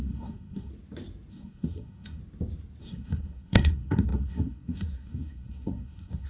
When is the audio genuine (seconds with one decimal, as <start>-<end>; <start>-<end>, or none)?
0.7-1.3; 2.2-2.8